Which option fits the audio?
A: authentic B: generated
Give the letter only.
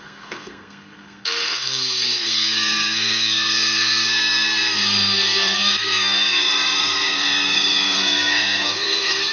B